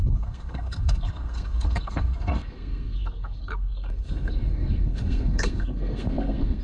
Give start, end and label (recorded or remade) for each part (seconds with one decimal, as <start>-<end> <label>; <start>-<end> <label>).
0.0-6.6 remade

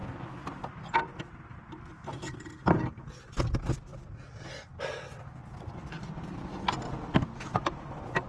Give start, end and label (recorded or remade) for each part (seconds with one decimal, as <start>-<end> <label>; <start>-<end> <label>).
0.0-8.3 recorded

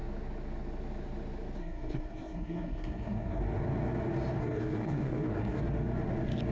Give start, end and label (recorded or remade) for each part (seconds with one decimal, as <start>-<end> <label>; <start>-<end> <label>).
0.0-1.6 recorded; 1.6-3.4 remade; 3.4-4.4 recorded; 4.4-5.6 remade; 5.6-6.5 recorded

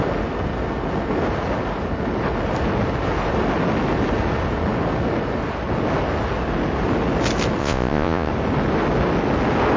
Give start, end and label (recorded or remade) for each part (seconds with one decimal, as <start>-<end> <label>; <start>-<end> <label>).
0.0-7.6 recorded; 7.6-8.3 remade; 8.3-9.8 recorded